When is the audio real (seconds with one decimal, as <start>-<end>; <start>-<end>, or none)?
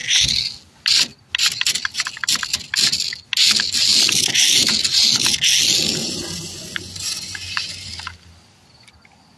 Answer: 0.0-6.0; 7.9-9.4